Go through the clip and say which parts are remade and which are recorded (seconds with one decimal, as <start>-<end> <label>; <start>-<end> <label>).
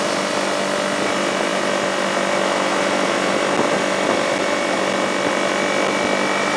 0.0-6.6 recorded